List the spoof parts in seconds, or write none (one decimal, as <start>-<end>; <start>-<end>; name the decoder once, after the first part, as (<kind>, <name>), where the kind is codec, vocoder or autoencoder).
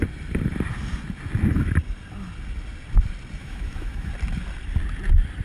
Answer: 3.4-4.1 (autoencoder, DAC-VAE)